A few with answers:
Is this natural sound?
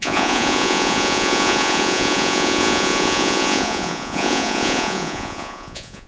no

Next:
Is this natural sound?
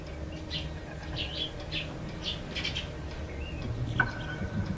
yes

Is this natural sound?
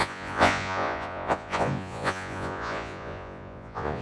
no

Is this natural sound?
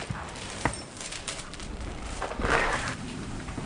no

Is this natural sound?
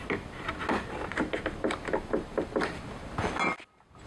yes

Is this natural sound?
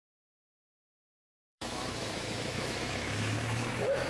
no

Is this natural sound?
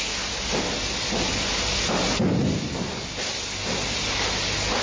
yes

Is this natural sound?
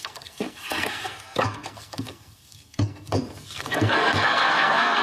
no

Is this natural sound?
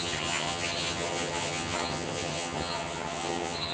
no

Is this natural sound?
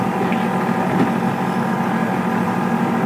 yes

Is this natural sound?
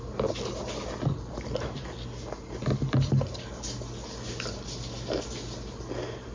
yes